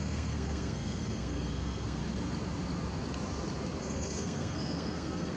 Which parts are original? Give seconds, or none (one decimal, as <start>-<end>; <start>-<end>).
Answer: 2.0-3.8